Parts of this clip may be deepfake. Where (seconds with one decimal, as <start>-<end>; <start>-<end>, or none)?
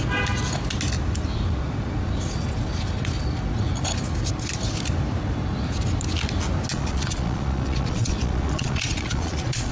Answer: 6.7-9.7